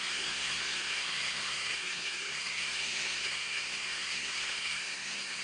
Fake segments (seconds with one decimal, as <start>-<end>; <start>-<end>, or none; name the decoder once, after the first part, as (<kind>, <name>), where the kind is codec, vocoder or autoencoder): 0.0-5.4 (codec, SNAC)